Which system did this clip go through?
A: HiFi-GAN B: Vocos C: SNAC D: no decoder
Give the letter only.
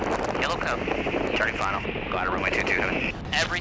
D